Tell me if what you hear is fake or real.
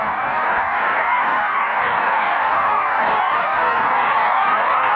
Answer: fake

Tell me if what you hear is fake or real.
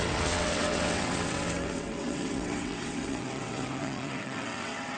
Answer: fake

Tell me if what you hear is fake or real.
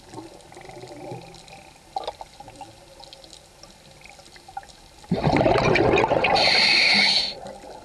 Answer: real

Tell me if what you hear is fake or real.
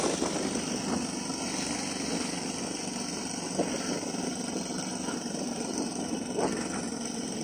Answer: real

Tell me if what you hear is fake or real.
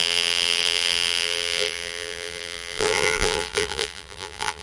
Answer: fake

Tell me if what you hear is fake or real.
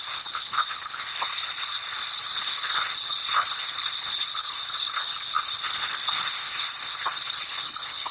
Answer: fake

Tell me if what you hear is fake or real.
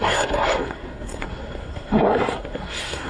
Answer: fake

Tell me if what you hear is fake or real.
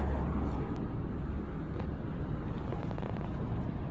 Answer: real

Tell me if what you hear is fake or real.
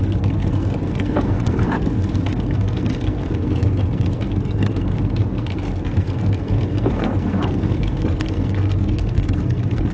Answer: fake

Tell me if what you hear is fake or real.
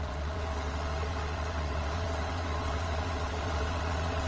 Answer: fake